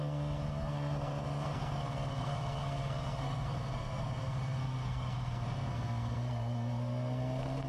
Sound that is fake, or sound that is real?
fake